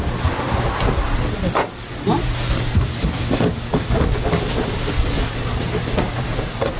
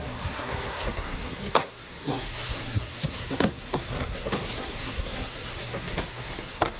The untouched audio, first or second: first